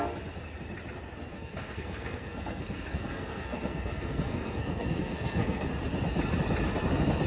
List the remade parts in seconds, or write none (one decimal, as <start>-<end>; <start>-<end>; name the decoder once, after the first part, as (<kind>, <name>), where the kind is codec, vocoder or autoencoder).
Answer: 1.3-5.7 (codec, SNAC)